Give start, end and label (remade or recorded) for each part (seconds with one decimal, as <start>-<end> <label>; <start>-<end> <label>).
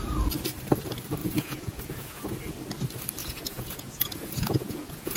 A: 0.0-1.2 recorded; 1.2-2.1 remade; 2.1-3.2 recorded; 3.2-5.2 remade